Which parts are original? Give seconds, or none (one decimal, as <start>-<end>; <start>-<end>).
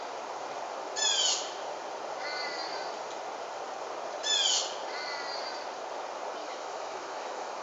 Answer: 0.0-6.4